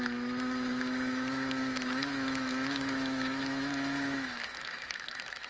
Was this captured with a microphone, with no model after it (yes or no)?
no